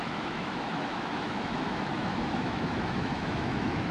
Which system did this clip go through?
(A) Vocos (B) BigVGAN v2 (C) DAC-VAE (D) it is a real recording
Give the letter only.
C